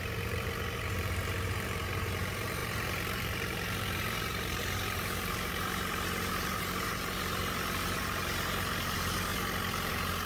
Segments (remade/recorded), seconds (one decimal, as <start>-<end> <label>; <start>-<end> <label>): 0.0-9.3 remade; 9.3-9.9 recorded; 9.9-10.3 remade